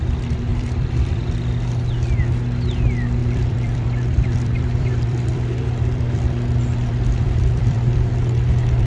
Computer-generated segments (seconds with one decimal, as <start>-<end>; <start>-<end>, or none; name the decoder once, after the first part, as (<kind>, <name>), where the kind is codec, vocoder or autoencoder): 0.5-1.2 (vocoder, BigVGAN v2); 3.2-8.1

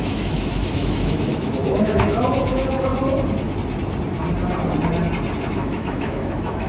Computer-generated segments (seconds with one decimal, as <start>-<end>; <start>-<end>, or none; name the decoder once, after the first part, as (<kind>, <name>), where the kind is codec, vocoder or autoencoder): 0.0-2.9 (autoencoder, DAC-VAE); 5.4-6.7

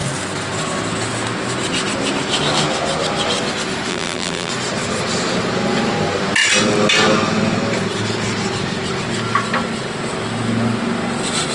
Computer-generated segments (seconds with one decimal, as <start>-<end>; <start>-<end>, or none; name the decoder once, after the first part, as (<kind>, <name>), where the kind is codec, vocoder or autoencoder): 3.9-4.5 (vocoder, BigVGAN v2)

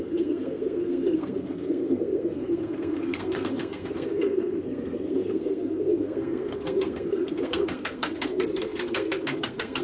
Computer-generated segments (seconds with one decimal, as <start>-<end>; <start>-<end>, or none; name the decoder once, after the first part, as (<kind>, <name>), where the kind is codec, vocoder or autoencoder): 0.0-9.8 (codec, SNAC)

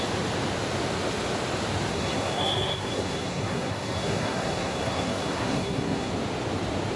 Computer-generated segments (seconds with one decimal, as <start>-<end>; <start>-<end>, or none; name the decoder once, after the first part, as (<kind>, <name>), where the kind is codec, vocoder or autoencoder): 1.9-6.1 (codec, SNAC)

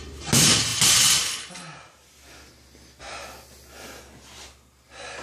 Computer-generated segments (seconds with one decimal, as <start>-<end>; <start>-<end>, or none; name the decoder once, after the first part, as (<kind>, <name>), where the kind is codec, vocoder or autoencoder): none

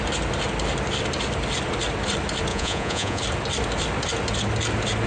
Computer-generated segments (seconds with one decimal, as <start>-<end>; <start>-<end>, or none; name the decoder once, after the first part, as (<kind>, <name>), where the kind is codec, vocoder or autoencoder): 2.5-3.2 (vocoder, Vocos)

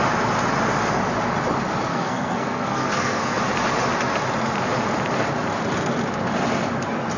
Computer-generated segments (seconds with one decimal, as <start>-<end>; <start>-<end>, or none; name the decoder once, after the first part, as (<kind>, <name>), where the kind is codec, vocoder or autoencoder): 1.9-3.4 (codec, SNAC)